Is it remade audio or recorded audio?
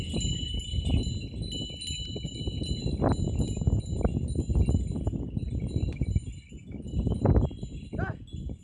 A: recorded